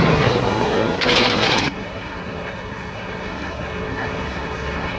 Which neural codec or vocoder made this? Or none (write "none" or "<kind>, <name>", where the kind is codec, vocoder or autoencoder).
codec, SNAC